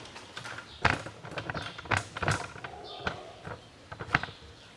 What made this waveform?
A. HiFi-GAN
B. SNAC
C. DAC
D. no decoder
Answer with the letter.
D